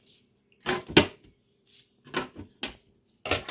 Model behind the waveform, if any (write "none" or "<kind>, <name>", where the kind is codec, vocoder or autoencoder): none